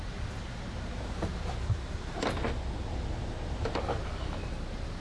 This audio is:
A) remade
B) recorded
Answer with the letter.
B